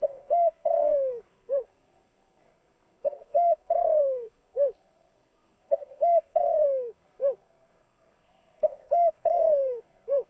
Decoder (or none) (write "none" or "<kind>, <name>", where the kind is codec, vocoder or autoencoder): codec, SNAC